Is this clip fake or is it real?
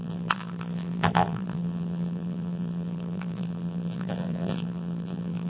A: fake